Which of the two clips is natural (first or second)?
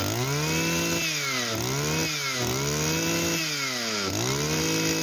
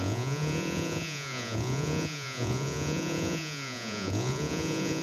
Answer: first